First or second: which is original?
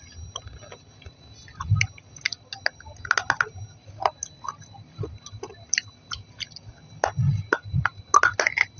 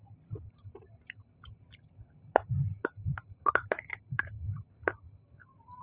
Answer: first